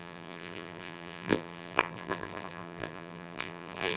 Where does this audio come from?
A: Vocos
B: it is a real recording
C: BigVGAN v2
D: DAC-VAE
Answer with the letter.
C